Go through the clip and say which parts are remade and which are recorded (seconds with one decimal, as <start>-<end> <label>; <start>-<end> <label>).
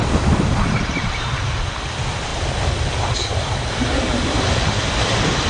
0.0-5.5 recorded